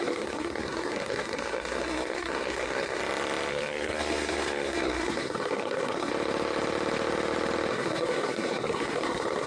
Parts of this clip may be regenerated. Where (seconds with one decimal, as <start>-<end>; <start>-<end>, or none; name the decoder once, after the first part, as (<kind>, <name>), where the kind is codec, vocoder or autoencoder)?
0.0-3.0 (codec, SNAC); 3.5-6.1; 7.7-9.5